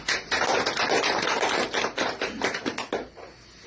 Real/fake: real